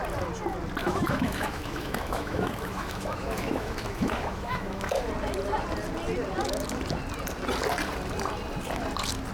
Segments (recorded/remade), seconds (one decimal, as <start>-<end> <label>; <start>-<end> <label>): 0.0-0.8 recorded; 0.8-5.1 remade; 5.1-9.3 recorded